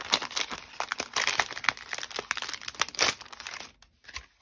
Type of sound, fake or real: real